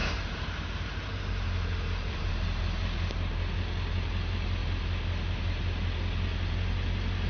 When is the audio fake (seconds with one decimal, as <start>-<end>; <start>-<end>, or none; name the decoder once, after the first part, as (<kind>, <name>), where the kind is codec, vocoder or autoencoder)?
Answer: 0.0-2.3 (vocoder, BigVGAN v2)